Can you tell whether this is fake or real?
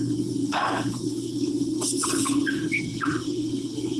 fake